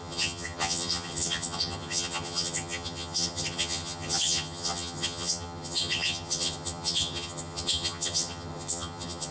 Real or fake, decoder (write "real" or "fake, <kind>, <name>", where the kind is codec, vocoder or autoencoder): fake, vocoder, HiFi-GAN